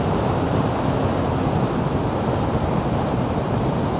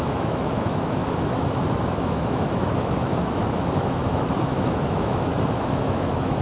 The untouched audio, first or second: first